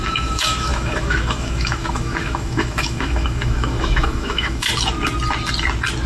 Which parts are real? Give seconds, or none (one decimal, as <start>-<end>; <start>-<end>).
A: 4.7-6.1